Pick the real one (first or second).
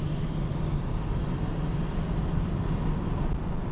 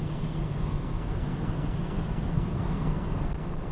first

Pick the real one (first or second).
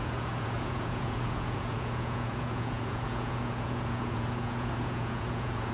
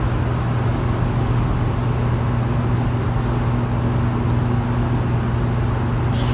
second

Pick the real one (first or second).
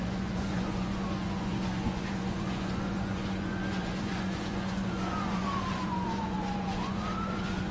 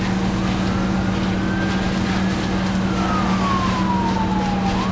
second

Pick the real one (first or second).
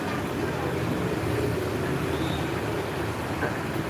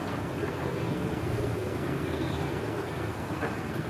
first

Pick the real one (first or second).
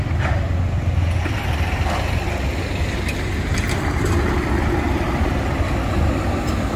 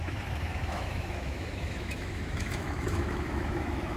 first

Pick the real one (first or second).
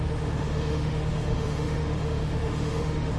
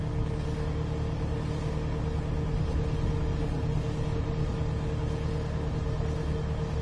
second